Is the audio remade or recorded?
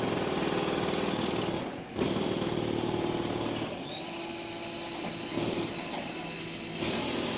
recorded